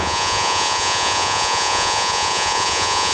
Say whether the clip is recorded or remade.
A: remade